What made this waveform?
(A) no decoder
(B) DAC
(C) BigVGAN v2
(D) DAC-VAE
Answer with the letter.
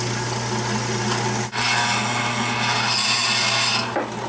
A